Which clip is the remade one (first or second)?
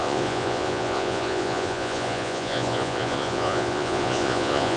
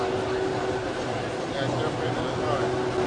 first